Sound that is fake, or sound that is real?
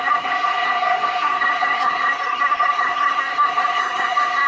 fake